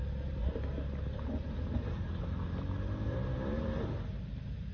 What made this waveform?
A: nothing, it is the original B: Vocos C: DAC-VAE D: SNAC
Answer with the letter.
A